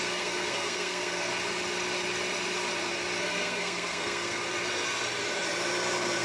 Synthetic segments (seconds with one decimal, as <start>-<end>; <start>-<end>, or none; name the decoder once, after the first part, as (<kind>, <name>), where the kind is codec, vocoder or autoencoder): 0.0-1.3 (codec, SNAC); 3.2-4.4